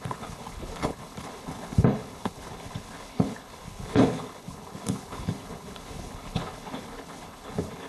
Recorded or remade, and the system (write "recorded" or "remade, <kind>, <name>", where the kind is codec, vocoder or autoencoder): remade, codec, HILCodec